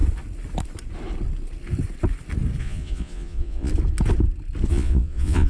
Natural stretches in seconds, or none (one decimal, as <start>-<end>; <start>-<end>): 0.0-2.6; 3.7-4.7